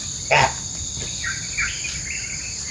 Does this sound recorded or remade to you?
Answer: recorded